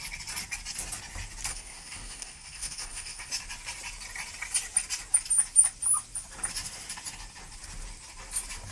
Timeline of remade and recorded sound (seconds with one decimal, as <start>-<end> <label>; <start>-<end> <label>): 0.0-1.5 recorded; 1.5-3.3 remade; 3.3-8.7 recorded